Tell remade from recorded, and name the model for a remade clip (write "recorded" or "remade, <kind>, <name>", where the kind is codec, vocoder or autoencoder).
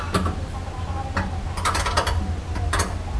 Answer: recorded